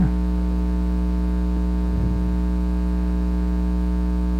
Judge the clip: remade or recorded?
recorded